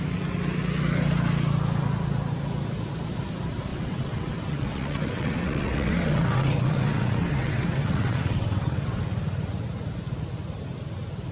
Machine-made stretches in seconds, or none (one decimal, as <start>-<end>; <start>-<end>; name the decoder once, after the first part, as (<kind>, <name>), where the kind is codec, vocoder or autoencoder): 3.7-9.0 (vocoder, WaveNeXt)